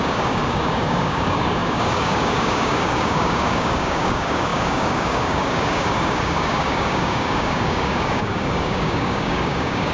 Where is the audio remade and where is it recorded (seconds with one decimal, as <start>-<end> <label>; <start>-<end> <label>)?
0.0-9.9 remade